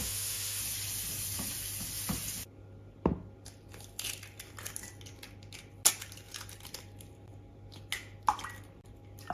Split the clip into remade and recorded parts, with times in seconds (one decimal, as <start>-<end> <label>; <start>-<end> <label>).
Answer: 0.0-0.6 remade; 0.6-9.3 recorded